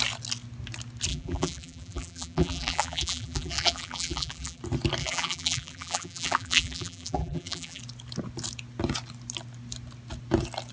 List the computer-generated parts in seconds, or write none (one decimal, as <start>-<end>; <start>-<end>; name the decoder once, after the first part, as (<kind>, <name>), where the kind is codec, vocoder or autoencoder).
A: 1.1-4.6 (vocoder, BigVGAN v2); 5.0-7.8